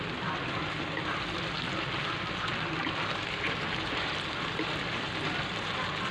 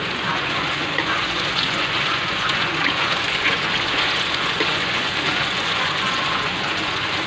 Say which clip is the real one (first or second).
first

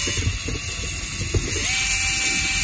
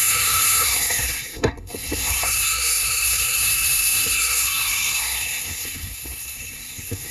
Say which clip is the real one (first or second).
first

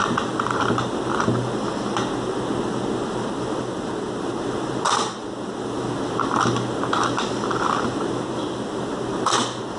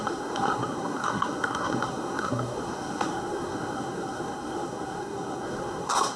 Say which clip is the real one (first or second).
first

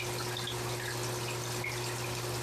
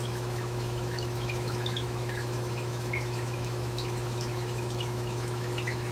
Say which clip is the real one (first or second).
first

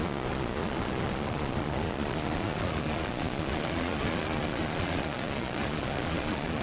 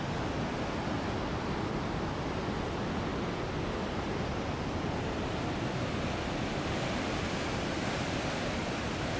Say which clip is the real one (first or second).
second